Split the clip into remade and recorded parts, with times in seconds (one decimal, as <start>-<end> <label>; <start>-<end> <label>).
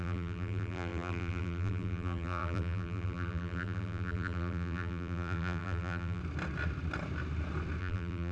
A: 0.0-6.2 remade; 6.2-7.8 recorded; 7.8-8.3 remade